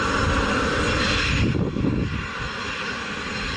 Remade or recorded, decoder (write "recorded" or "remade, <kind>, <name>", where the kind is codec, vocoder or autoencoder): recorded